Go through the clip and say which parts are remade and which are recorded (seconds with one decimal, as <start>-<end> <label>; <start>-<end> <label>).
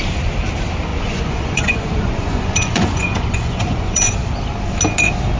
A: 0.0-0.9 recorded; 0.9-4.1 remade; 4.1-5.4 recorded